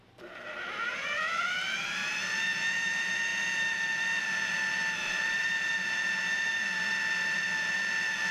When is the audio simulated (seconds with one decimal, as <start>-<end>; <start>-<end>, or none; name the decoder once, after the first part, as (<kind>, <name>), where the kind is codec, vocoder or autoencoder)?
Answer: 0.0-8.3 (vocoder, BigVGAN v2)